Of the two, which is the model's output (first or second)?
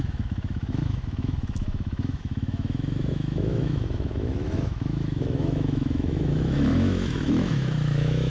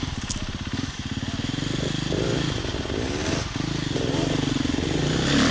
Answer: first